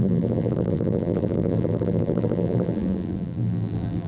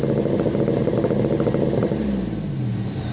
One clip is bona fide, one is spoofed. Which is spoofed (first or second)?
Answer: first